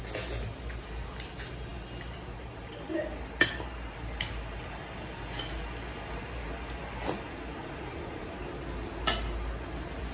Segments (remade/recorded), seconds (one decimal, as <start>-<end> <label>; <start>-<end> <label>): 0.0-7.6 recorded; 7.6-8.2 remade; 8.2-10.1 recorded